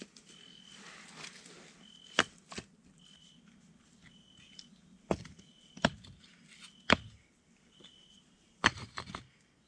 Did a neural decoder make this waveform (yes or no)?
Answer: no